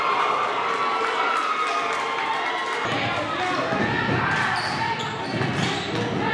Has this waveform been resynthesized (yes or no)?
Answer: no